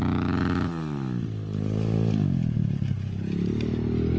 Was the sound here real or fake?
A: real